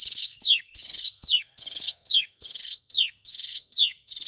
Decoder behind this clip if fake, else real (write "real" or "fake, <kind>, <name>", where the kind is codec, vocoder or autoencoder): fake, codec, SNAC